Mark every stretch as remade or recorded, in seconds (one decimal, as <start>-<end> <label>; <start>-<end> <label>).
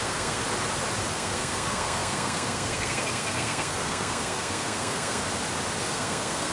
0.0-0.4 remade; 0.4-1.1 recorded; 1.1-5.2 remade; 5.2-5.8 recorded; 5.8-6.5 remade